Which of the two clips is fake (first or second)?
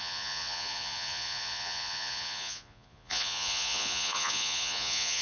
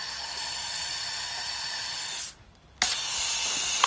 first